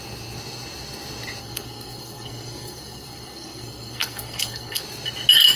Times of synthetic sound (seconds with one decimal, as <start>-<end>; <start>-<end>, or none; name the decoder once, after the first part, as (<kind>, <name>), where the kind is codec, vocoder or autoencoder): 1.4-4.8 (codec, SNAC)